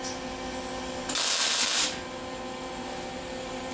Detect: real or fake real